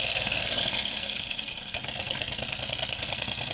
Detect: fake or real fake